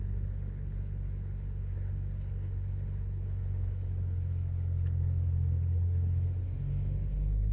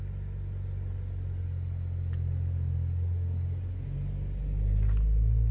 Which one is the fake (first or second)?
first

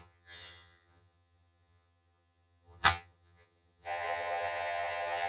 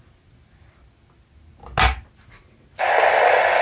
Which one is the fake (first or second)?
first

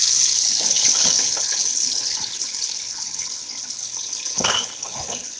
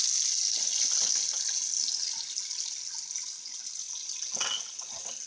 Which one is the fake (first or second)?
first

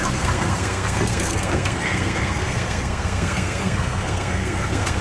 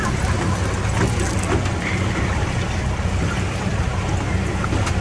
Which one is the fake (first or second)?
first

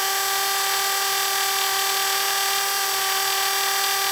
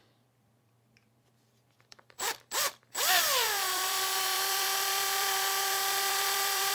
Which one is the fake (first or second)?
second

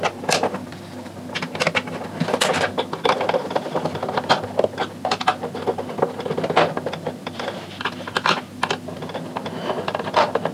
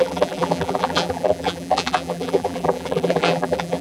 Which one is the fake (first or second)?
second